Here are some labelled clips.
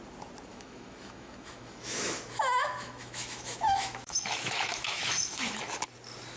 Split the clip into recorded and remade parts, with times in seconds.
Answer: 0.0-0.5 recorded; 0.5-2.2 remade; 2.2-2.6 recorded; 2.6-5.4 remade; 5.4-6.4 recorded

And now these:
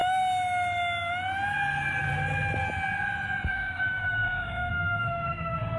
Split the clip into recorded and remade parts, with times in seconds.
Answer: 0.0-3.5 recorded; 3.5-5.8 remade

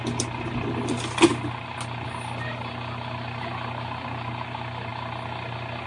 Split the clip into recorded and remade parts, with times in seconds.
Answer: 0.0-5.9 recorded

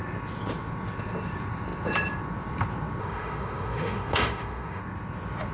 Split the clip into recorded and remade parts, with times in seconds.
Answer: 0.0-3.0 recorded; 3.0-4.8 remade; 4.8-5.5 recorded

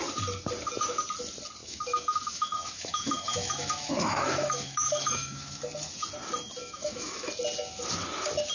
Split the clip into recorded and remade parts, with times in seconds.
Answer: 0.0-1.6 recorded; 1.6-5.6 remade; 5.6-6.6 recorded; 6.6-7.3 remade; 7.3-8.5 recorded

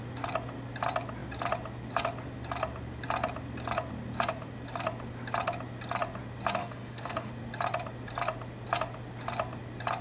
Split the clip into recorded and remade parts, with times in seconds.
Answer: 0.0-6.6 recorded; 6.6-7.3 remade; 7.3-10.0 recorded